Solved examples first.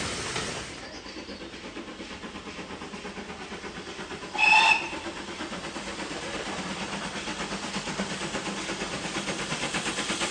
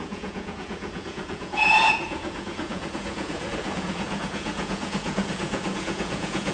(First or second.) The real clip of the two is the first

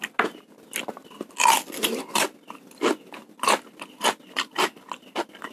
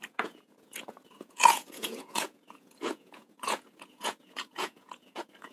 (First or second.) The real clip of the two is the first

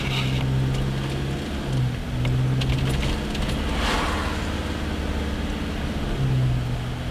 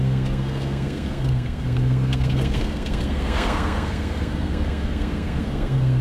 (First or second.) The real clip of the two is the first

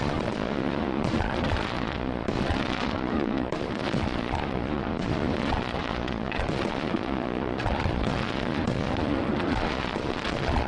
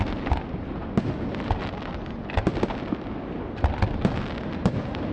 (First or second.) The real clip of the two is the second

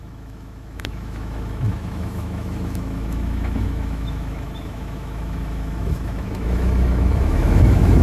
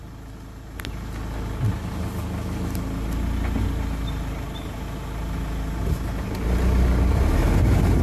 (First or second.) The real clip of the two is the second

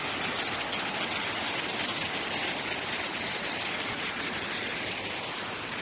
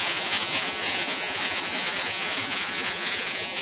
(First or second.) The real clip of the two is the first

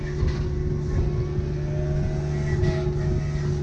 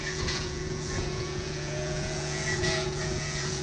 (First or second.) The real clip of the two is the first